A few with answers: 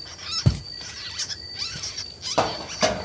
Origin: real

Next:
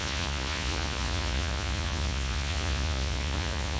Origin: fake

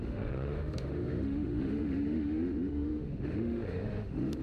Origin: fake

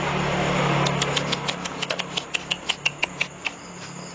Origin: real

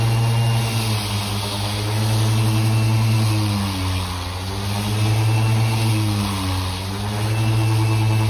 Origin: real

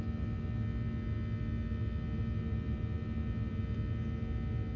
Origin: real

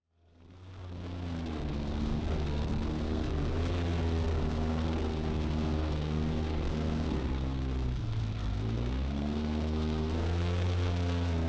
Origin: fake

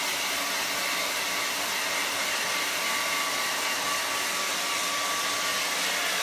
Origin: real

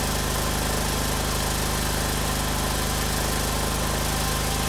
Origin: real